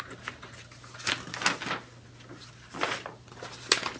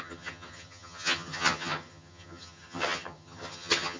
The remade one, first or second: second